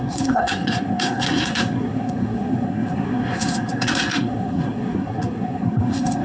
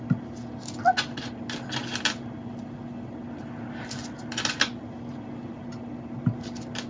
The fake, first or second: first